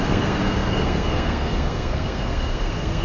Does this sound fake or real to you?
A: fake